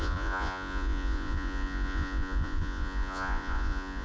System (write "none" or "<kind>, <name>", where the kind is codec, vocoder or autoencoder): vocoder, Vocos